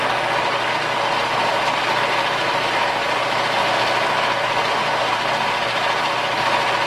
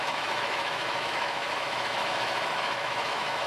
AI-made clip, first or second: second